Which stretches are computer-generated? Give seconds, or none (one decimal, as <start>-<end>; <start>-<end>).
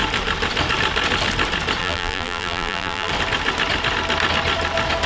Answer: 1.8-3.1